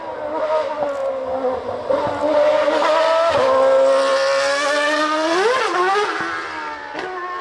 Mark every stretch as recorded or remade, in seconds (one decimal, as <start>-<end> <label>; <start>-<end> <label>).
0.0-7.4 recorded